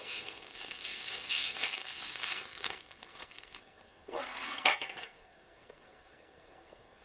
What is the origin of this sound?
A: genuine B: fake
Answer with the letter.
B